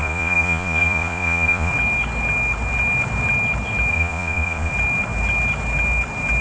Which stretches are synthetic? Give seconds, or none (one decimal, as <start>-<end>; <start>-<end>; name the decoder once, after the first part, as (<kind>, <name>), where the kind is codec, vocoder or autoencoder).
0.0-1.7 (vocoder, Vocos); 3.9-4.7